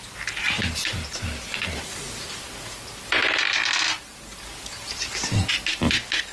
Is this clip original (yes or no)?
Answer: yes